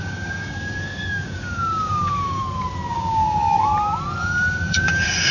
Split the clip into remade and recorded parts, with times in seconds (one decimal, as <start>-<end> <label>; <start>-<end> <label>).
0.0-2.4 remade; 2.4-2.9 recorded; 2.9-3.7 remade; 3.7-4.2 recorded; 4.2-5.3 remade